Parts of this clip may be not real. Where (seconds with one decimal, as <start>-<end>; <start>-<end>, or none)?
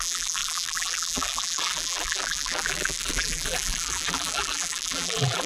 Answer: 0.0-5.5